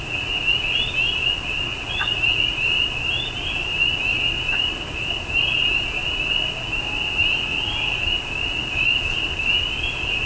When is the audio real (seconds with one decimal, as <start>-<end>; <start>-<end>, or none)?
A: 0.0-1.7; 2.6-7.5; 8.0-10.3